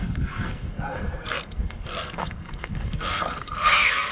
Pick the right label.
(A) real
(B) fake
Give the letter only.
B